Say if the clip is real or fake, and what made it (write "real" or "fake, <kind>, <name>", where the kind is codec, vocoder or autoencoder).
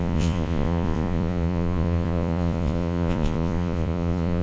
fake, vocoder, Vocos